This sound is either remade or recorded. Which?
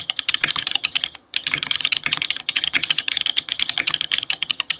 remade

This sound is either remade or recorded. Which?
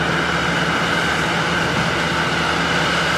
recorded